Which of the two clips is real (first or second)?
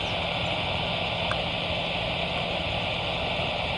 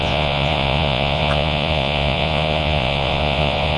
first